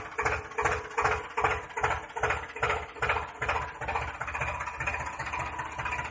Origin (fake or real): real